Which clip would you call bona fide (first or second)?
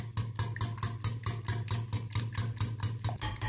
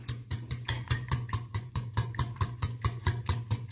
first